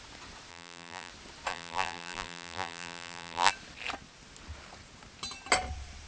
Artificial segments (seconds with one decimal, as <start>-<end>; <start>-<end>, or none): 0.5-1.1; 1.5-3.5